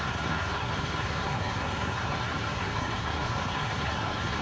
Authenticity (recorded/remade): remade